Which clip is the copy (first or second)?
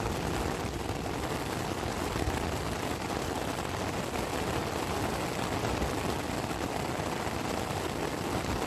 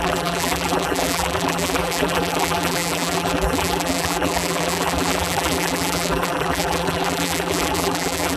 second